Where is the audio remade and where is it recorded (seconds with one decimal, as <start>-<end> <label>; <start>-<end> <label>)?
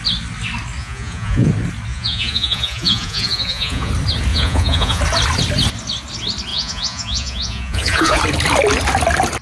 0.0-0.8 recorded; 0.8-1.5 remade; 1.5-1.9 recorded; 1.9-3.9 remade; 3.9-4.3 recorded; 4.3-5.0 remade; 5.0-6.5 recorded; 6.5-8.2 remade; 8.2-9.4 recorded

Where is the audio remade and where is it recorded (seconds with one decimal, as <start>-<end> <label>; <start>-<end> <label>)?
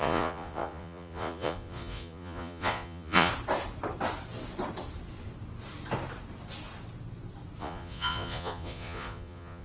0.0-3.3 remade; 3.3-7.6 recorded; 7.6-9.6 remade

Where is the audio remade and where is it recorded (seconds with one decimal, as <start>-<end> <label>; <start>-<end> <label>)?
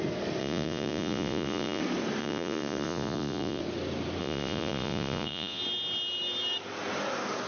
0.0-0.4 recorded; 0.4-1.8 remade; 1.8-2.2 recorded; 2.2-3.6 remade; 3.6-4.2 recorded; 4.2-5.6 remade; 5.6-7.5 recorded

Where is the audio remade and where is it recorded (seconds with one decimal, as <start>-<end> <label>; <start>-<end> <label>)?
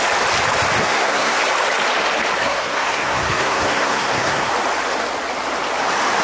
0.0-0.8 recorded; 0.8-1.4 remade; 1.4-2.4 recorded; 2.4-4.5 remade; 4.5-6.2 recorded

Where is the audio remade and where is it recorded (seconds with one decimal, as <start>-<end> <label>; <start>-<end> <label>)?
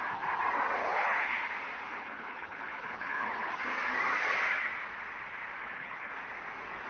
0.0-0.8 recorded; 0.8-1.5 remade; 1.5-1.9 recorded; 1.9-3.5 remade; 3.5-5.6 recorded; 5.6-6.1 remade; 6.1-6.9 recorded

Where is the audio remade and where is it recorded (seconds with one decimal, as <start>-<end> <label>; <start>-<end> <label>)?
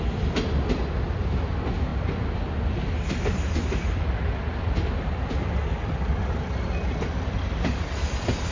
0.0-8.5 recorded